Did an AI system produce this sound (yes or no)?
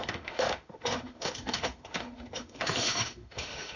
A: yes